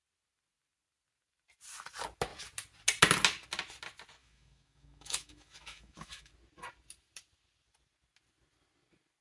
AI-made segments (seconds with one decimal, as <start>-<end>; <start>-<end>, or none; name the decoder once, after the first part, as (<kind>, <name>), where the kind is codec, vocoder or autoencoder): 4.2-6.3 (autoencoder, DAC-VAE)

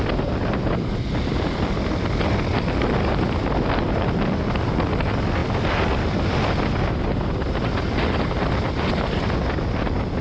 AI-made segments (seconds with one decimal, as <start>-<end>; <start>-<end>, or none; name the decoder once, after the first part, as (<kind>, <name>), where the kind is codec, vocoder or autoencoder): none